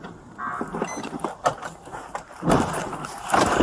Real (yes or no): yes